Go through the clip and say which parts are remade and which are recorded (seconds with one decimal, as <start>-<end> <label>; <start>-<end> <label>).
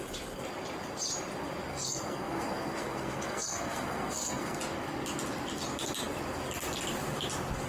0.0-1.7 recorded; 1.7-4.6 remade; 4.6-7.7 recorded